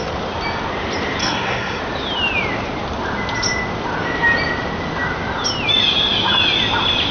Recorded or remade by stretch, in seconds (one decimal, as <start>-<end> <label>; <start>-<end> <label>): 0.0-1.2 recorded; 1.2-1.8 remade; 1.8-7.1 recorded